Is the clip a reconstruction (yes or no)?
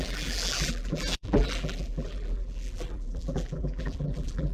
yes